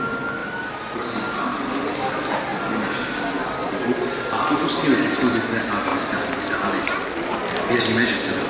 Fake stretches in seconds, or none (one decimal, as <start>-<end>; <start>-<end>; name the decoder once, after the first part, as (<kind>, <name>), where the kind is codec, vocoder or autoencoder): 0.4-1.0 (vocoder, BigVGAN v2); 1.5-2.1; 5.9-7.8